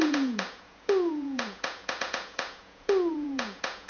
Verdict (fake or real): fake